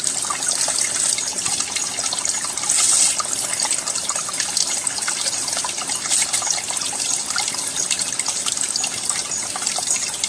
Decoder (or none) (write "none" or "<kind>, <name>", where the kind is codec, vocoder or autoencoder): none